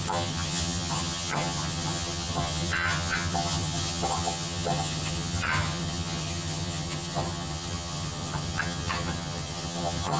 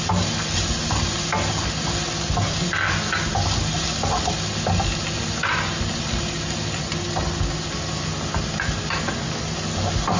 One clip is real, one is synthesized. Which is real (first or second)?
second